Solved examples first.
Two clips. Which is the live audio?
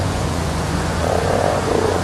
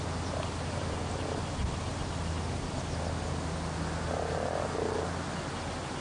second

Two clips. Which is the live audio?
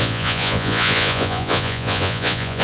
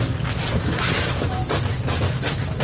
second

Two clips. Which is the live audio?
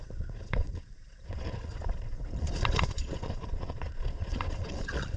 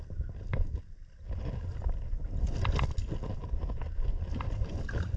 second